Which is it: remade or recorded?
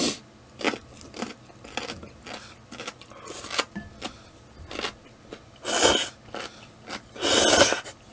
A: recorded